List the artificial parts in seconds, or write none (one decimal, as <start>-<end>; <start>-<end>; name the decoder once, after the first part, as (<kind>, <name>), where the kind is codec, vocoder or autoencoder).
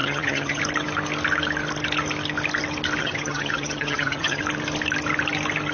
0.0-0.6 (vocoder, HiFi-GAN); 3.0-4.4